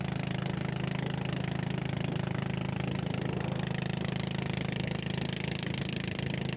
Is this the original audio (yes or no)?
yes